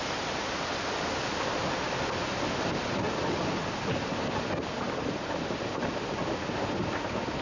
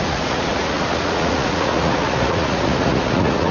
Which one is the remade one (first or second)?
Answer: second